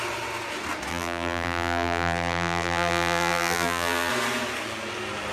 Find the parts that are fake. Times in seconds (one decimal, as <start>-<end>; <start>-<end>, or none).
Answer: 0.9-4.1